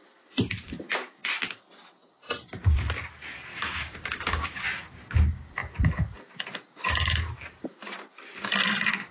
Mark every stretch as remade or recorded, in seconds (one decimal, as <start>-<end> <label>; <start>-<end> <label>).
0.0-3.5 recorded; 3.5-4.6 remade; 4.6-9.1 recorded